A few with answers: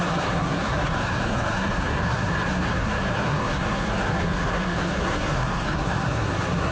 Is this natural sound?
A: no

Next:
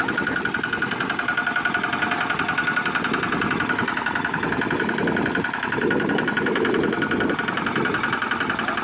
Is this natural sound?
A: yes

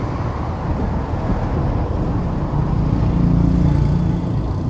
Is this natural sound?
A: yes